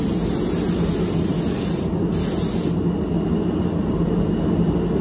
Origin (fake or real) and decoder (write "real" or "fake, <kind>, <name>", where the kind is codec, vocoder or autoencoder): real